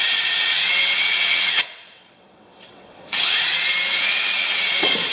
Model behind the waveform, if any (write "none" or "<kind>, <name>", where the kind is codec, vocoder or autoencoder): vocoder, WaveNeXt